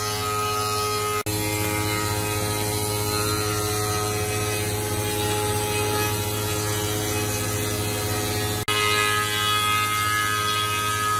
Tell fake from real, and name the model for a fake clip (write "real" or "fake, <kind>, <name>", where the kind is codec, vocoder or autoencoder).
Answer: real